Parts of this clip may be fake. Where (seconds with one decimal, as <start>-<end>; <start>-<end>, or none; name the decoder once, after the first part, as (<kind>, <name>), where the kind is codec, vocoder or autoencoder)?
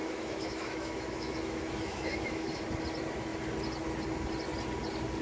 0.0-2.6 (autoencoder, DAC-VAE)